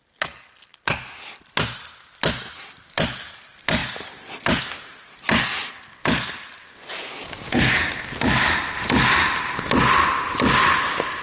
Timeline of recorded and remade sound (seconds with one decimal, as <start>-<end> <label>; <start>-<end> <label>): 0.0-7.0 recorded; 7.0-7.9 remade; 7.9-11.2 recorded